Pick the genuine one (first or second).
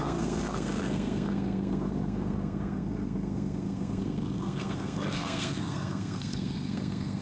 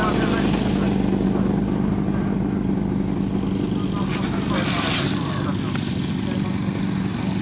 second